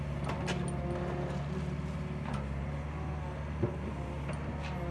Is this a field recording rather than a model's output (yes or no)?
yes